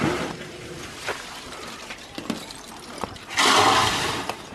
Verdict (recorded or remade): recorded